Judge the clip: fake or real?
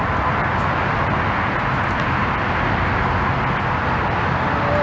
real